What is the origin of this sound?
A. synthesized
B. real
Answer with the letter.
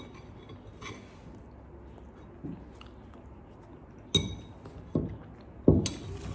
B